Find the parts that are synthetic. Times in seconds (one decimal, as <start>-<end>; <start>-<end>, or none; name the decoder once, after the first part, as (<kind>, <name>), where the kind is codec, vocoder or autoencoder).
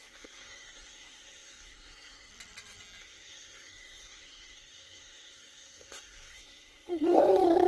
0.0-2.3 (codec, SNAC); 3.0-7.7